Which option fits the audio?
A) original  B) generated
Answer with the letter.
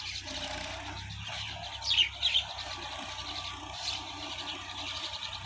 A